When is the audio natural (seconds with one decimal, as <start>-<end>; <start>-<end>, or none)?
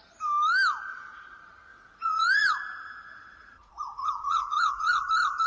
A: 0.0-1.7; 2.5-3.6; 4.9-5.5